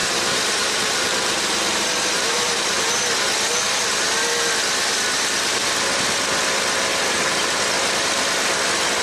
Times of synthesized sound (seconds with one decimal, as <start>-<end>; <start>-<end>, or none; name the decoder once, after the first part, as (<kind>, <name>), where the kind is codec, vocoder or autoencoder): 0.0-2.9 (vocoder, BigVGAN v2); 6.9-7.6